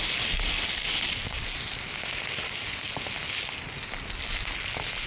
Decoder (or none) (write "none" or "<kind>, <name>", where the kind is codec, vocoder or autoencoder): none